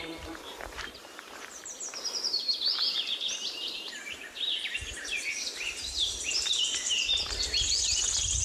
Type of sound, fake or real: fake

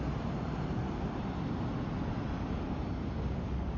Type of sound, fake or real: real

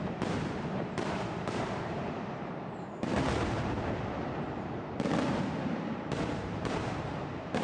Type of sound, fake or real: fake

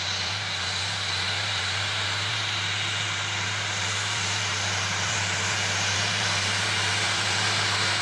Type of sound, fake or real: fake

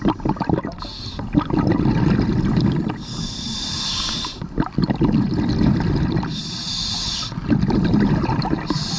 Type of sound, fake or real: real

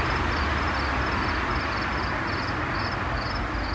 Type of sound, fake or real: real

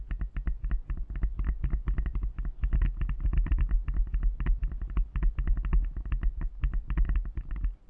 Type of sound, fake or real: real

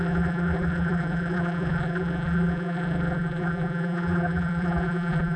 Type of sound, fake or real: fake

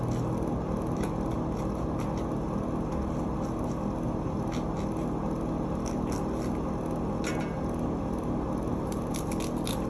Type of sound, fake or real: real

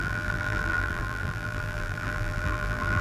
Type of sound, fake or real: fake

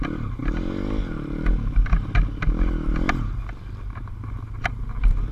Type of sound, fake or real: real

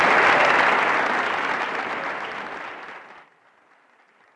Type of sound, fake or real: real